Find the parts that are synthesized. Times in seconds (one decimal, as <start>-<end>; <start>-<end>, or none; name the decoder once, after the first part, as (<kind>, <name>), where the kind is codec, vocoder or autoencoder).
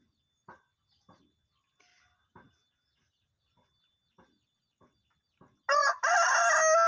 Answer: none